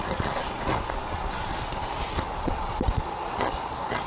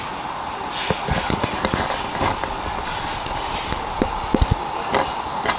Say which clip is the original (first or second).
second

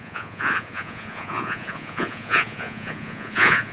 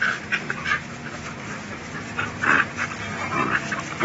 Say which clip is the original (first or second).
second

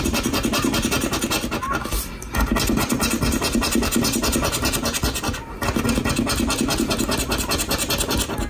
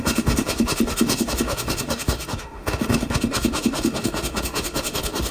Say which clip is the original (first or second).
first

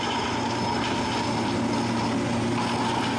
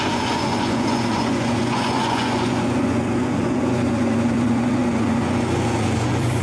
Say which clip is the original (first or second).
first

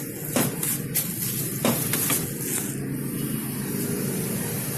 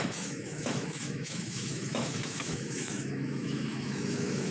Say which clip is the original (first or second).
first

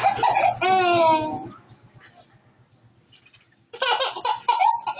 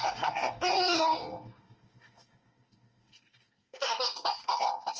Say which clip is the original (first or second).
first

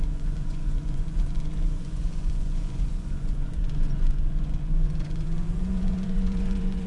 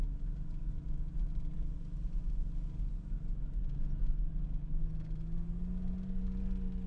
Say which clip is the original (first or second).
second